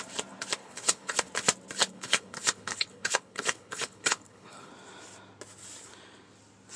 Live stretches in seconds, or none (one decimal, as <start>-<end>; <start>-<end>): 0.0-0.6; 1.3-1.8; 4.7-6.8